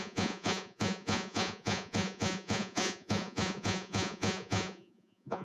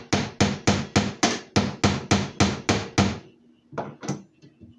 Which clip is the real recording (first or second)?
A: second